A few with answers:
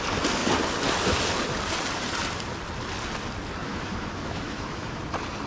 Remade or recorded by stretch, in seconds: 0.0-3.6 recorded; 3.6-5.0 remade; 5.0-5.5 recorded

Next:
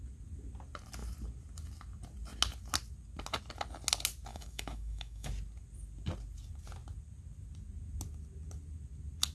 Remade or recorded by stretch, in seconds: 0.0-4.3 recorded; 4.3-5.3 remade; 5.3-9.3 recorded

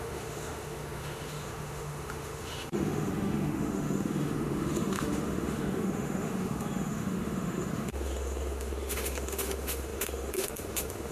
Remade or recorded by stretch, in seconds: 0.0-11.1 remade

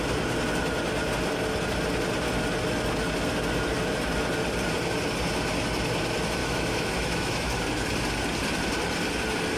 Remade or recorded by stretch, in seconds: 0.0-6.4 recorded; 6.4-7.6 remade; 7.6-9.6 recorded